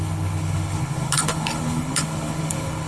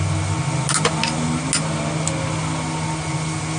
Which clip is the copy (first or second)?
first